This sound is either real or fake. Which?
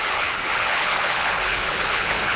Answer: fake